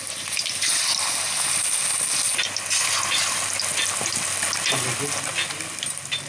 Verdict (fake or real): real